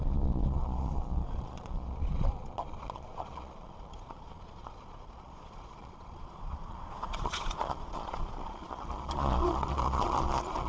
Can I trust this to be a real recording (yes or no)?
no